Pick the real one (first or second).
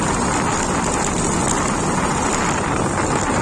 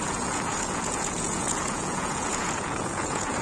first